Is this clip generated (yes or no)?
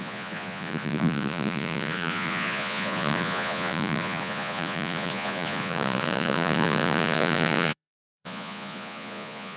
yes